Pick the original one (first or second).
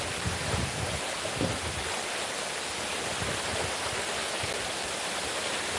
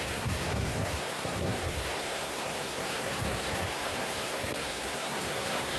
first